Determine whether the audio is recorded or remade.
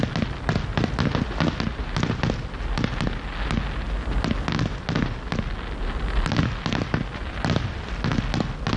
recorded